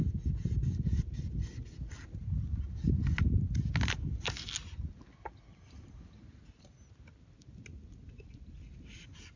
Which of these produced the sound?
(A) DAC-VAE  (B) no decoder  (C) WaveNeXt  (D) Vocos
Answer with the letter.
B